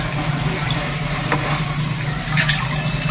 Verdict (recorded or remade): recorded